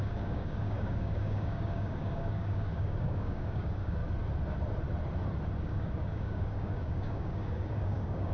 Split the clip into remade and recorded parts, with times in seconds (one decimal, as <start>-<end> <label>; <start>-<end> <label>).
0.0-4.0 remade; 4.0-5.6 recorded; 5.6-8.3 remade